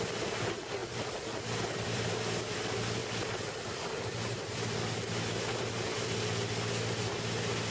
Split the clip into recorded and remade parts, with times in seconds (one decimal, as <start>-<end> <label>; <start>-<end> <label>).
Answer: 0.0-0.8 recorded; 0.8-2.1 remade; 2.1-3.0 recorded; 3.0-4.8 remade; 4.8-7.7 recorded

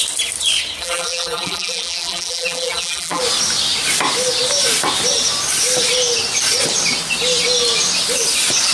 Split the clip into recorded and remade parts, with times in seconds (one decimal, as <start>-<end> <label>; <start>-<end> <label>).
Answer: 0.0-0.8 recorded; 0.8-3.2 remade; 3.2-8.7 recorded

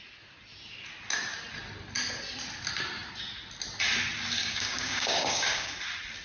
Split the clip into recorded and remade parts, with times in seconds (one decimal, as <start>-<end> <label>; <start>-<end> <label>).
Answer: 0.0-4.4 recorded; 4.4-5.7 remade; 5.7-6.2 recorded

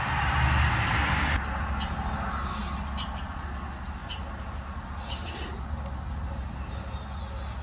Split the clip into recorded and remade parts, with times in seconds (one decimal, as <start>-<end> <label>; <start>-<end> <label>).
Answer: 0.0-7.6 recorded

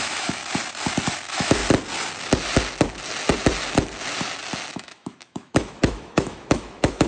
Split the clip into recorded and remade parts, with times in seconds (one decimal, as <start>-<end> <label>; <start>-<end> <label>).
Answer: 0.0-0.4 remade; 0.4-1.1 recorded; 1.1-1.6 remade; 1.6-4.7 recorded; 4.7-7.1 remade

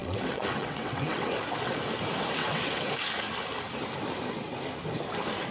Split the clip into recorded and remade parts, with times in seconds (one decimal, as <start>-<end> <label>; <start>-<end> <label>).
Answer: 0.0-1.3 remade; 1.3-2.4 recorded; 2.4-2.9 remade; 2.9-5.5 recorded

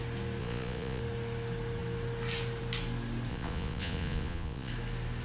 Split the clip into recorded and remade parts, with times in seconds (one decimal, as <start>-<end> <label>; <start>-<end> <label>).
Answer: 0.0-0.4 recorded; 0.4-1.0 remade; 1.0-3.3 recorded; 3.3-4.7 remade; 4.7-5.2 recorded

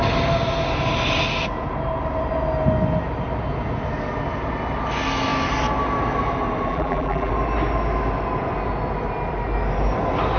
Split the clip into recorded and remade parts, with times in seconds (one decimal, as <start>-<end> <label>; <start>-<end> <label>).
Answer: 0.0-6.7 recorded; 6.7-7.3 remade; 7.3-10.4 recorded